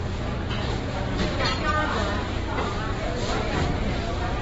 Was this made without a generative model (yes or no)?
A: yes